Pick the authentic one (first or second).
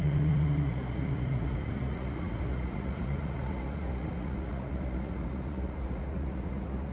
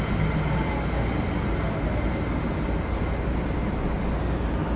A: second